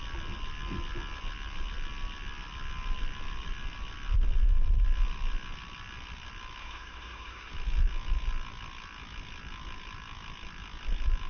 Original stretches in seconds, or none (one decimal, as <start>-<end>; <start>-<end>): 0.0-6.6; 7.5-11.3